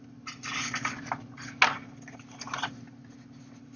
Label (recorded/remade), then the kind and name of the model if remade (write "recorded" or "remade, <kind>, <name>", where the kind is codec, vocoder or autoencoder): recorded